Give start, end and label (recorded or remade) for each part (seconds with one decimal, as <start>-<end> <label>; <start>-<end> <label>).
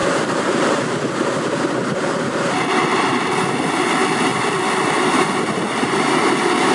0.0-0.8 remade; 0.8-6.7 recorded